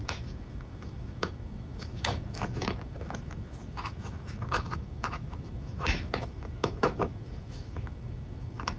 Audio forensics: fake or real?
fake